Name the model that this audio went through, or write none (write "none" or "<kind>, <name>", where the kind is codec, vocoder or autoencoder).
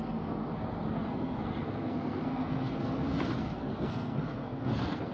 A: codec, SNAC